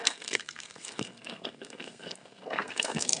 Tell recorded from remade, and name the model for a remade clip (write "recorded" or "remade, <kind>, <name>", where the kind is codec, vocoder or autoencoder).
remade, codec, SNAC